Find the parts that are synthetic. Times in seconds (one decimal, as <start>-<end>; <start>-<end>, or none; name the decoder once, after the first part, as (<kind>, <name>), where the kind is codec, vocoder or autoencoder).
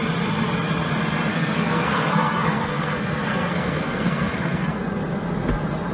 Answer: 1.3-4.8 (codec, SNAC)